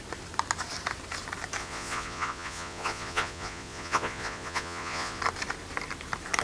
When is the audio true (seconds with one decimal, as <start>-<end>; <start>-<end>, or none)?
0.0-1.6; 5.2-6.4

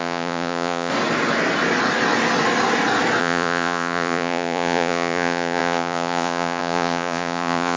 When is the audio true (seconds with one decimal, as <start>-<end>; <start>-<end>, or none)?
0.9-3.2

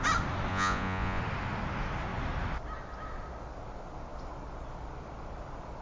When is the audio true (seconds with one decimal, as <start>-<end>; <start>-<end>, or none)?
0.0-0.5; 1.2-5.8

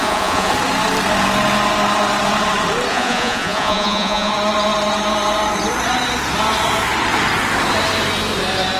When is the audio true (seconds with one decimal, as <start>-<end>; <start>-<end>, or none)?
0.5-2.9; 4.3-8.8

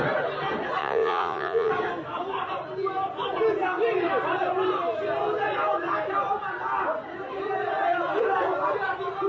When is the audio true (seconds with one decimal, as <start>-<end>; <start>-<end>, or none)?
0.0-0.8; 1.7-9.3

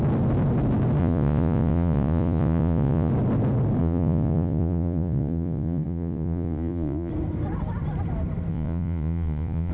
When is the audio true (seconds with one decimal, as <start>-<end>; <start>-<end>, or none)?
0.0-1.0; 3.1-3.8; 7.1-8.5

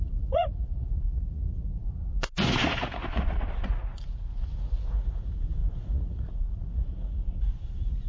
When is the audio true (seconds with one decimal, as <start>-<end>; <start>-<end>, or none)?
none